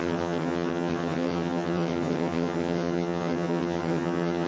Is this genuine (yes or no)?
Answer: no